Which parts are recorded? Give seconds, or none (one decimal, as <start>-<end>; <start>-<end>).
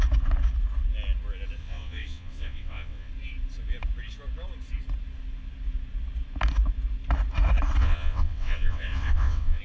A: 0.0-1.6; 3.1-7.8